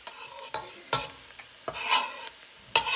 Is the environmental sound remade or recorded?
recorded